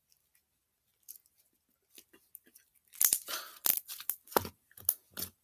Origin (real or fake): real